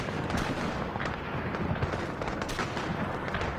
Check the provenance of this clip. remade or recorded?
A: recorded